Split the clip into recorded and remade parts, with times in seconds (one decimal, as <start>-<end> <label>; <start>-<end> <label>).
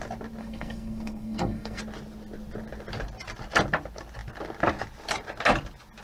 0.0-0.4 recorded; 0.4-1.8 remade; 1.8-6.0 recorded